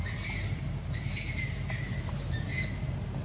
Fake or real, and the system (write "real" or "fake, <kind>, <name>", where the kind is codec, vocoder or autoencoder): real